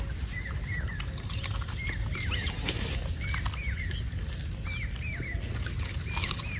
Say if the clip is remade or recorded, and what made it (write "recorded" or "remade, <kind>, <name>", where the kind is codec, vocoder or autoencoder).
recorded